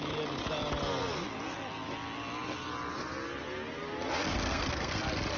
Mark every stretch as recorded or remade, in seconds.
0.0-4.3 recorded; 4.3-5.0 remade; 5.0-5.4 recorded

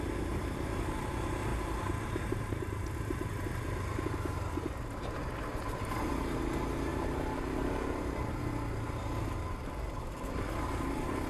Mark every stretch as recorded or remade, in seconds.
0.0-1.5 recorded; 1.5-3.3 remade; 3.3-6.9 recorded; 6.9-8.4 remade; 8.4-11.3 recorded

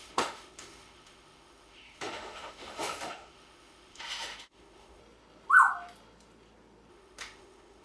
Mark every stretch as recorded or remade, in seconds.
0.0-5.0 remade; 5.0-6.9 recorded; 6.9-7.8 remade